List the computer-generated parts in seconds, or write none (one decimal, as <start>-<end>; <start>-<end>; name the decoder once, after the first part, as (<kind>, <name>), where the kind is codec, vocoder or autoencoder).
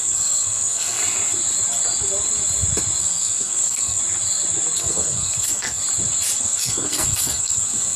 0.0-1.0 (codec, SNAC); 3.0-4.0; 4.8-5.8; 6.4-8.0